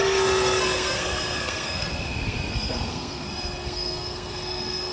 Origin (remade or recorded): remade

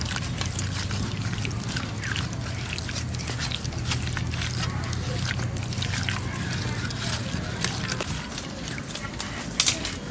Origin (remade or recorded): recorded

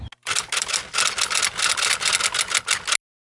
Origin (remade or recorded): recorded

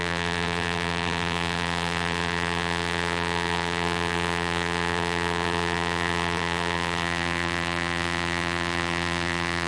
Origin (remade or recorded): remade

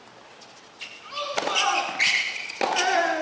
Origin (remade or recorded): recorded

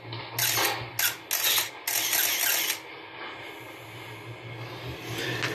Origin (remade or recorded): recorded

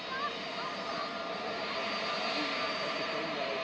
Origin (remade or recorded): recorded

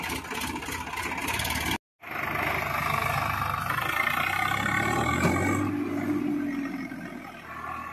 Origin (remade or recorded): recorded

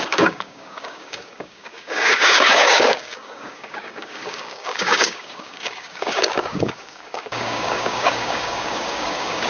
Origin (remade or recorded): remade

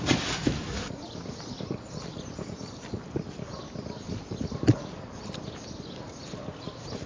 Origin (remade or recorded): remade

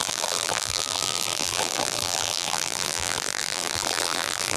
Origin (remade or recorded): remade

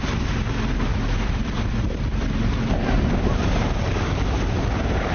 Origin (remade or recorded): remade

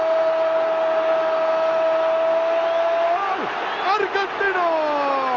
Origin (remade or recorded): recorded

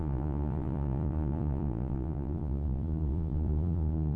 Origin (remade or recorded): remade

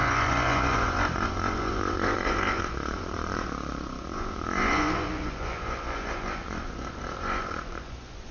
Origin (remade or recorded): remade